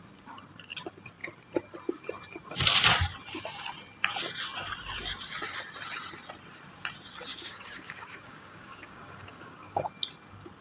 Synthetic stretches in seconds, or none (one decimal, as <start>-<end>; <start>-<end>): 7.3-9.9